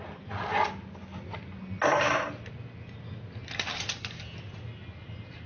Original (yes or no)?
yes